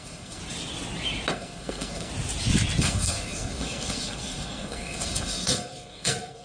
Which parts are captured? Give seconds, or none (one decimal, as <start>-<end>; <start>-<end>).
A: 0.4-1.3; 2.1-2.8